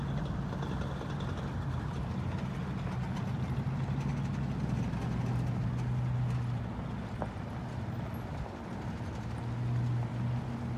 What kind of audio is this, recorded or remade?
recorded